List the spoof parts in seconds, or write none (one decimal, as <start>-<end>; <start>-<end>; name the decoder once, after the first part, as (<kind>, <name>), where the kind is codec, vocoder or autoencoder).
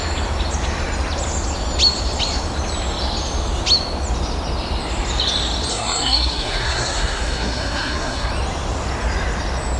5.7-8.3 (codec, SNAC)